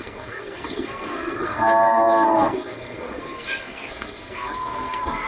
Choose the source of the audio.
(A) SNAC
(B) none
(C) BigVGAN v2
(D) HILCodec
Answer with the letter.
A